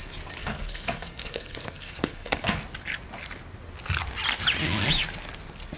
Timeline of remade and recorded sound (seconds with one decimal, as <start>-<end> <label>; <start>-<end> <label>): 0.0-0.4 recorded; 0.4-2.6 remade; 2.6-5.8 recorded